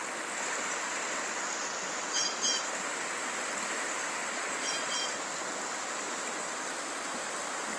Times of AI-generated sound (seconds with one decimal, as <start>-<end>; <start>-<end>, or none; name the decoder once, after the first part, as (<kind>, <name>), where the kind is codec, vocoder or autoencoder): 4.2-5.2 (vocoder, Vocos)